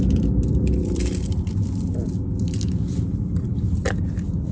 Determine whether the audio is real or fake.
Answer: fake